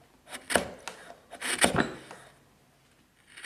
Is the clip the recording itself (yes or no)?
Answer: yes